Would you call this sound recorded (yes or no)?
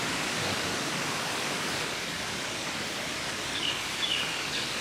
no